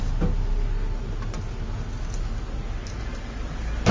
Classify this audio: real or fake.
real